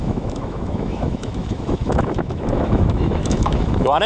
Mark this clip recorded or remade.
remade